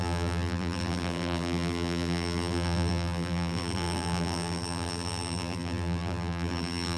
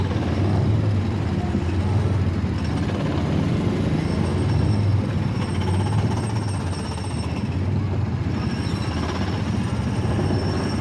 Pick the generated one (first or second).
first